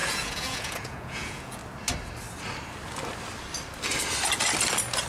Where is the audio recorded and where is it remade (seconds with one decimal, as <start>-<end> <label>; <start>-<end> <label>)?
0.0-1.6 remade; 1.6-5.1 recorded

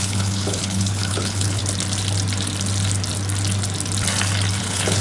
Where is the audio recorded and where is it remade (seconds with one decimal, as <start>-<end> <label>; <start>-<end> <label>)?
0.0-1.6 remade; 1.6-4.6 recorded; 4.6-5.0 remade

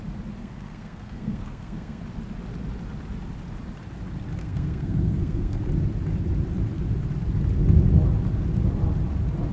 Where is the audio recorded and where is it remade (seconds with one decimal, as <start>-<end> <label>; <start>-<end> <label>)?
0.0-0.4 recorded; 0.4-2.0 remade; 2.0-4.4 recorded; 4.4-5.6 remade; 5.6-9.5 recorded

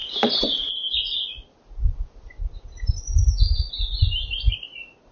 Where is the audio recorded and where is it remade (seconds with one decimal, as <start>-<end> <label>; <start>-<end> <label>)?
0.0-5.1 recorded